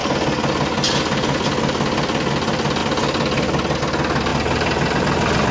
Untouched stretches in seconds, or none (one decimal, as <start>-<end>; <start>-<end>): 0.0-5.5